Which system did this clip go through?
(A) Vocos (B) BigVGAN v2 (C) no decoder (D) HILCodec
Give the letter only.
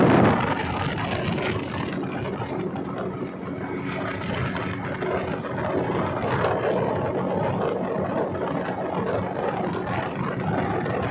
C